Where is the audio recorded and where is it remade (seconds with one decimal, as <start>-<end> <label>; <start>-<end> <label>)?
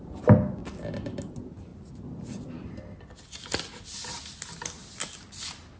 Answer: 0.0-5.8 recorded